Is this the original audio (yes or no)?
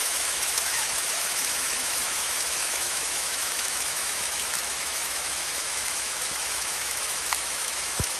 no